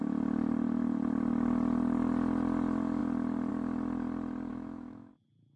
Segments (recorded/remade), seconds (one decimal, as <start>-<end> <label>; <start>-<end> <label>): 0.0-4.5 recorded; 4.5-5.1 remade; 5.1-5.6 recorded

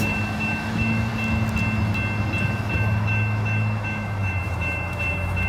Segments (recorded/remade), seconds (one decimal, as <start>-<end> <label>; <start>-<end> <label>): 0.0-1.1 remade; 1.1-2.4 recorded; 2.4-5.5 remade